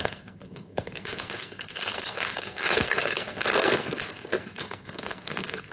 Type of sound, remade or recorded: remade